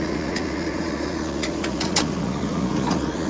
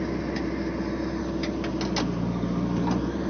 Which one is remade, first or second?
first